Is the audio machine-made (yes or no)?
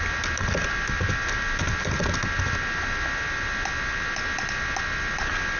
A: no